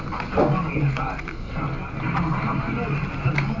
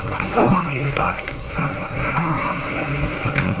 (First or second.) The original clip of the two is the first